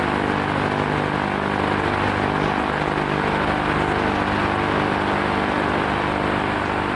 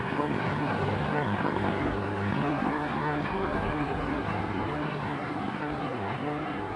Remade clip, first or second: second